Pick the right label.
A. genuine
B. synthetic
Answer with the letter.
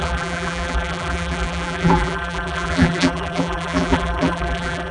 B